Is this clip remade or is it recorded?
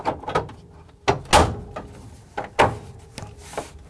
recorded